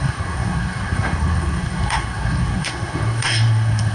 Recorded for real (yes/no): no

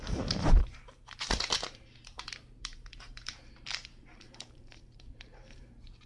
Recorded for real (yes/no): no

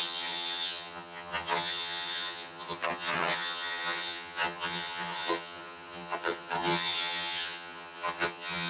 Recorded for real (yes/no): no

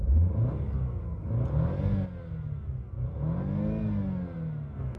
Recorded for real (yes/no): yes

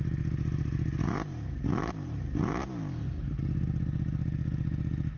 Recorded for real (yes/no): yes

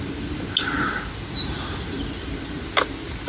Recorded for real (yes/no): yes